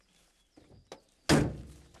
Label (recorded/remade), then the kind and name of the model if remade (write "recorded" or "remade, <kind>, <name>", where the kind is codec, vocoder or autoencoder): recorded